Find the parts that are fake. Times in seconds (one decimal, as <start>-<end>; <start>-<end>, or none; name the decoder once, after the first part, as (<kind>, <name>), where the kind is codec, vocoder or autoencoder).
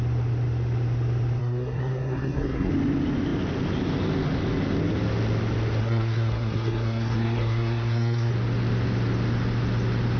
1.4-2.7 (codec, SNAC); 5.8-8.3